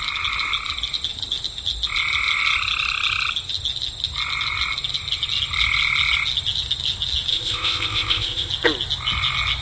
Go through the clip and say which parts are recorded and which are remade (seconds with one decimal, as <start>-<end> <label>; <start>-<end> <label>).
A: 0.0-7.3 recorded; 7.3-8.5 remade; 8.5-9.6 recorded